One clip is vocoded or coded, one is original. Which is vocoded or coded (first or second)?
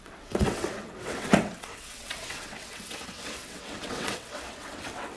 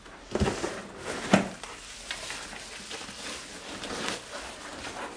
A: first